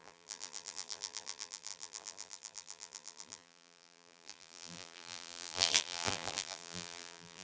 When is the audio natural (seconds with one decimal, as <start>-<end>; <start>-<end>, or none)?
none